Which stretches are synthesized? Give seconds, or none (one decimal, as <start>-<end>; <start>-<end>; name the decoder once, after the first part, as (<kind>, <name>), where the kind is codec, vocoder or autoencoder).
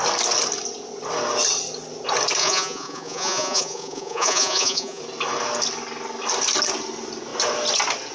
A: 2.4-5.0 (vocoder, Vocos)